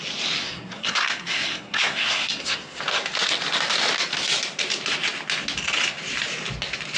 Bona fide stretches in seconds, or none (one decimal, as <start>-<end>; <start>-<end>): 0.0-0.4; 2.8-7.0